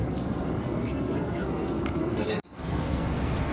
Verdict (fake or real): fake